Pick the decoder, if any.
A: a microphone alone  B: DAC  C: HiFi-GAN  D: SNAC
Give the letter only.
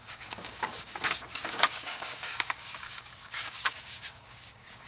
B